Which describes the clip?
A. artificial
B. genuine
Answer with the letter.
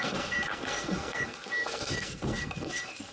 A